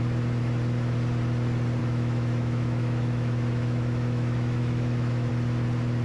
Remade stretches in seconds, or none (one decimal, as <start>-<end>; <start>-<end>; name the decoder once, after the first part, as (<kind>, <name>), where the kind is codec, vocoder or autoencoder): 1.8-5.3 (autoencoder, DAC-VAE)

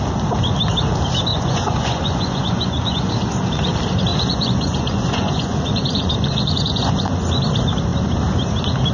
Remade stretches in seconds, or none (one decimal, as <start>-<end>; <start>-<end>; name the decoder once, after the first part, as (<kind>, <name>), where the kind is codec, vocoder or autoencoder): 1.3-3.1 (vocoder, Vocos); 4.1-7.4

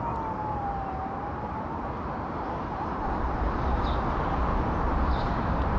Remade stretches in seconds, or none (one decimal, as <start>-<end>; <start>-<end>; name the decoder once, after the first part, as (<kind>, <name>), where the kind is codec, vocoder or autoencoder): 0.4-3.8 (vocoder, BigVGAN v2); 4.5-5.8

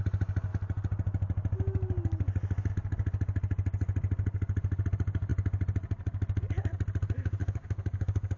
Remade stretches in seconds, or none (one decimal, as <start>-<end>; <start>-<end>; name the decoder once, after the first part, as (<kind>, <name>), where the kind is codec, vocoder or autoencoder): 7.4-8.4 (codec, DAC)

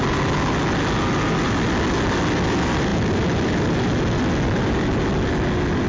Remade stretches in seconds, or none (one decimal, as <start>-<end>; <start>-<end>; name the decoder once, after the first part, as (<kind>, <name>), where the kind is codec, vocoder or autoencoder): none

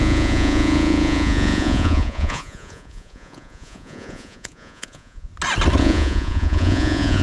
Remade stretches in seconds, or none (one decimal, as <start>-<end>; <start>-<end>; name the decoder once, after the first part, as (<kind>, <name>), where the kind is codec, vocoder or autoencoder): 0.0-5.3 (vocoder, Vocos); 5.8-7.2

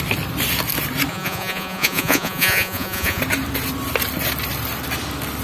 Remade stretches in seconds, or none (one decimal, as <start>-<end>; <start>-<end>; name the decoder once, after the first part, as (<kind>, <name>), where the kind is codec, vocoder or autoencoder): 1.1-3.2 (vocoder, Vocos)

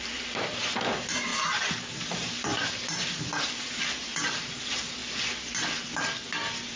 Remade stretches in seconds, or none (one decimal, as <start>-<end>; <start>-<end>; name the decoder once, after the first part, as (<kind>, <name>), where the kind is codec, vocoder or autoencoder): 0.0-1.3 (vocoder, BigVGAN v2); 1.9-5.0